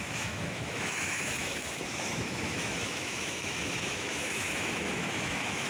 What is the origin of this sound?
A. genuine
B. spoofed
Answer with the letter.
B